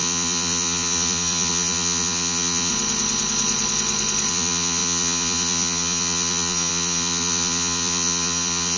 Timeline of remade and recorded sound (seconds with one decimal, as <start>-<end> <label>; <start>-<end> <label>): 0.0-2.7 remade; 2.7-4.3 recorded; 4.3-8.8 remade